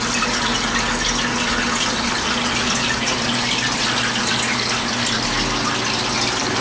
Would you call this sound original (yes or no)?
yes